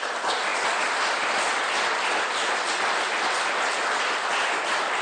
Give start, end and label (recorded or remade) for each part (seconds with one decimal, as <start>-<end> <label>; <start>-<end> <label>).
0.0-5.0 recorded